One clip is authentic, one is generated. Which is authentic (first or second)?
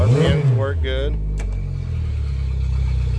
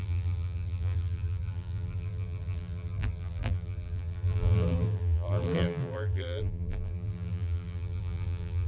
first